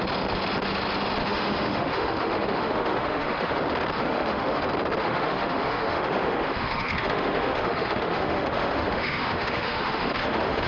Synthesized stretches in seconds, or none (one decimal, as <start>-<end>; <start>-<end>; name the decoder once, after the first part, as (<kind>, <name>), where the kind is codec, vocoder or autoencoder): 1.2-3.6 (autoencoder, DAC-VAE); 4.0-4.6; 5.0-10.7